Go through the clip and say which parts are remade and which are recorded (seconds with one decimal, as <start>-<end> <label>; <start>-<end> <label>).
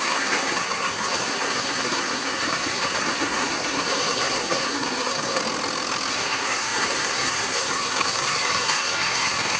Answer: 0.0-5.4 remade; 5.4-6.1 recorded; 6.1-9.6 remade